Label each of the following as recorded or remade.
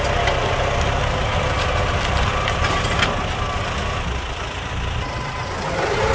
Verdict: recorded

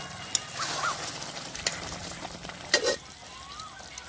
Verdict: recorded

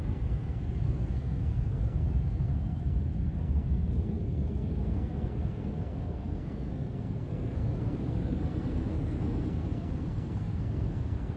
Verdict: remade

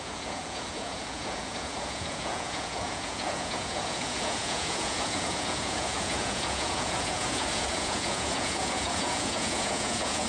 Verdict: remade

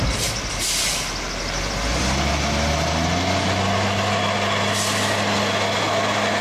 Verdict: recorded